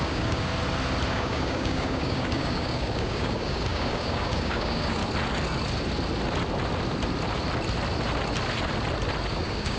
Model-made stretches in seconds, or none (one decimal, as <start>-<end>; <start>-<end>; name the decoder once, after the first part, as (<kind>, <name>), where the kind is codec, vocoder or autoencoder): 0.0-0.5 (codec, DAC); 1.1-5.0; 9.3-9.8